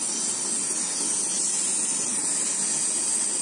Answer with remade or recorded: recorded